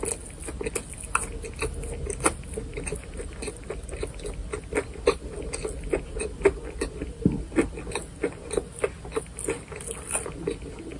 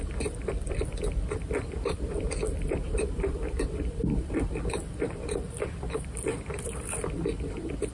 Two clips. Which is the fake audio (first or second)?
second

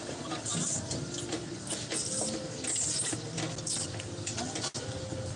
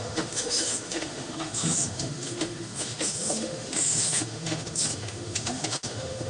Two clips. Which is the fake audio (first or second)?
second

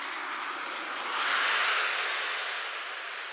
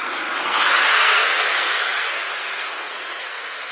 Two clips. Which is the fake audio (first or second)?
second